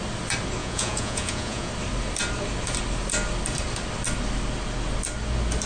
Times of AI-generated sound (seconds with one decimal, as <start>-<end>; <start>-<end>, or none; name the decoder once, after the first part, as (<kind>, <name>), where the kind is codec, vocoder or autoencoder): 0.6-1.7 (vocoder, Vocos)